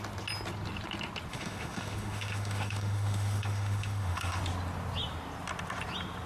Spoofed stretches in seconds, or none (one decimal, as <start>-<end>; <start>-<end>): 1.3-4.4